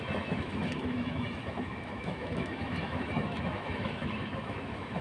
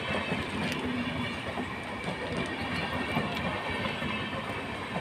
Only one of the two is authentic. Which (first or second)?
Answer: second